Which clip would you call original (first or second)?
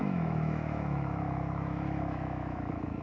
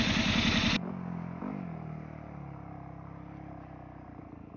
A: second